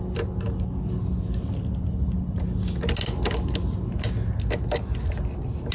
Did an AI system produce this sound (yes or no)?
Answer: no